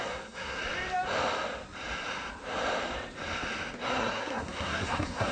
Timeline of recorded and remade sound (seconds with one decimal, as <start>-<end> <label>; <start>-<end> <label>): 0.0-0.6 remade; 0.6-3.8 recorded; 3.8-5.3 remade